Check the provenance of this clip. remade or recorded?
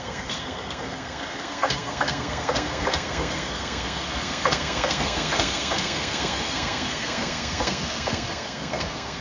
remade